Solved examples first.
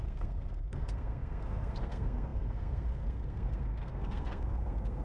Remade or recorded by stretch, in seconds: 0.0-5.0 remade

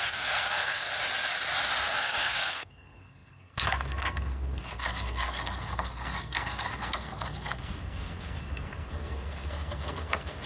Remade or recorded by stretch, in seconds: 0.0-0.9 remade; 0.9-1.8 recorded; 1.8-10.5 remade

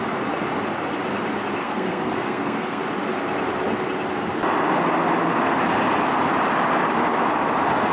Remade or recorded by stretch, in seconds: 0.0-1.6 recorded; 1.6-2.8 remade; 2.8-7.9 recorded

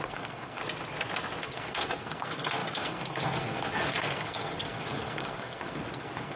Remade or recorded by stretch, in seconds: 0.0-0.6 remade; 0.6-1.4 recorded; 1.4-6.4 remade

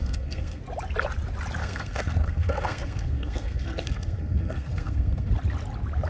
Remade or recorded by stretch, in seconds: 0.0-0.6 remade; 0.6-1.6 recorded; 1.6-5.3 remade; 5.3-6.1 recorded

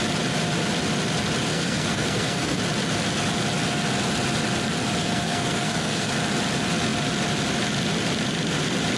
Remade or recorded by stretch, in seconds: 0.0-1.5 recorded; 1.5-2.6 remade; 2.6-5.0 recorded; 5.0-6.1 remade; 6.1-9.0 recorded